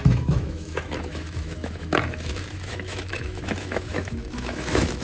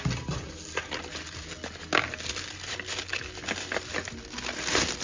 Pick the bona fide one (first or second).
second